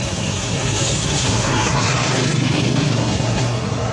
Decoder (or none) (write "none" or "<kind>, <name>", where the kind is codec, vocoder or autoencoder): codec, SNAC